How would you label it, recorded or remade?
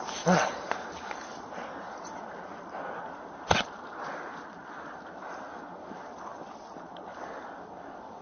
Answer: recorded